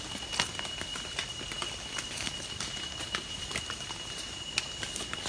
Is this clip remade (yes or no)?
no